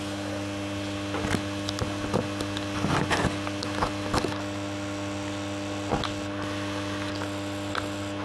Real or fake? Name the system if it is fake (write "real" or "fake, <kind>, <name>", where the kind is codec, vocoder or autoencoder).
real